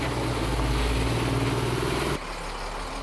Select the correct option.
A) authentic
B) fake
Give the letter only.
A